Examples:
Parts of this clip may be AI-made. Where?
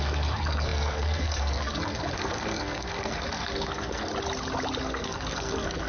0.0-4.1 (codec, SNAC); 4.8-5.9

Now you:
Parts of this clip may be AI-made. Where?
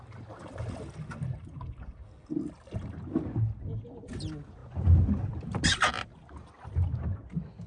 none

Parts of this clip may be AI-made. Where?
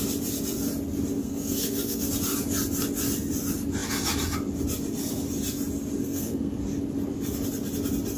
1.2-2.1 (codec, SNAC); 6.0-6.6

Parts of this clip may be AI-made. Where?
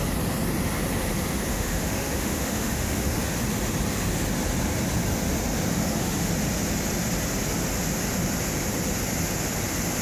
1.5-3.2 (autoencoder, DAC-VAE); 5.7-6.3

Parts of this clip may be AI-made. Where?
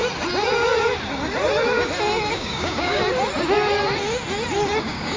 2.3-3.0 (codec, DAC); 4.8-5.2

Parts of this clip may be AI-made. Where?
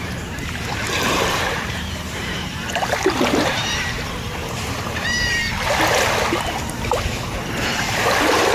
0.0-5.4 (vocoder, BigVGAN v2); 7.8-8.5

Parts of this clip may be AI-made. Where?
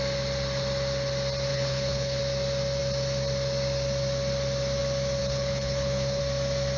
1.5-2.2 (codec, HILCodec); 5.2-6.2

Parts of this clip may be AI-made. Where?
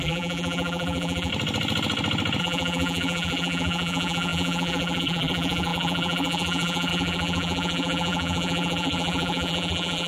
0.0-1.3 (vocoder, BigVGAN v2); 2.4-10.1